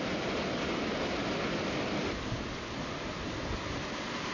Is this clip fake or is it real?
real